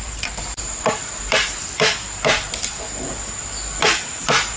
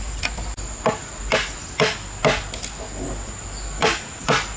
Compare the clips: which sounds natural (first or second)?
second